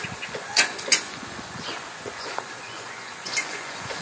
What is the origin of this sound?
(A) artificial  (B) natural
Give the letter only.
A